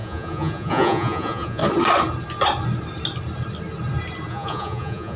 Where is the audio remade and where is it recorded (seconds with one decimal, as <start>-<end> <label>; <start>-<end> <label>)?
0.0-1.6 remade; 1.6-4.3 recorded; 4.3-5.2 remade